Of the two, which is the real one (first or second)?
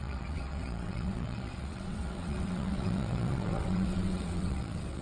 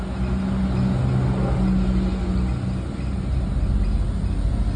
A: second